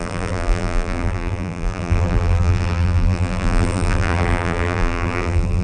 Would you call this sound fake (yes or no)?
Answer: yes